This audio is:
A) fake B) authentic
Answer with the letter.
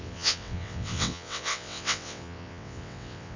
A